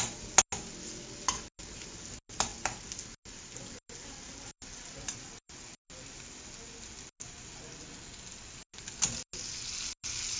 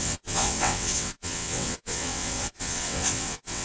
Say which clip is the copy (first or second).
second